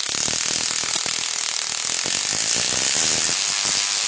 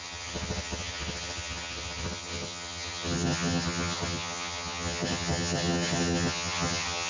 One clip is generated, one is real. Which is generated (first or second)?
second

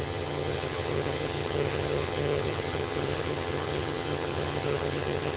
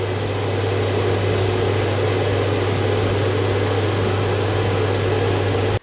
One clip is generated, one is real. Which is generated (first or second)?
first